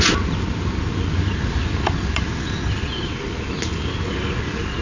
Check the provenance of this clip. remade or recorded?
recorded